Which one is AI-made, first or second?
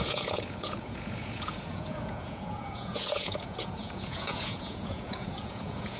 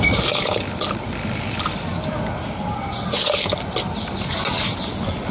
first